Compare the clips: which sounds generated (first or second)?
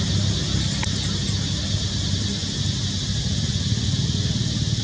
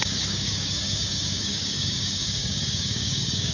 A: second